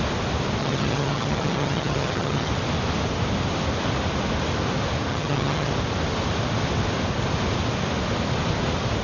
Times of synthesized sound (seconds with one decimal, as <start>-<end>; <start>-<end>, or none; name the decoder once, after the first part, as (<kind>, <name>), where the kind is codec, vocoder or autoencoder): 0.6-2.5 (vocoder, HiFi-GAN); 5.1-5.7